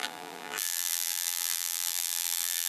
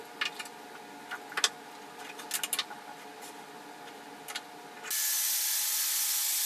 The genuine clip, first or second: second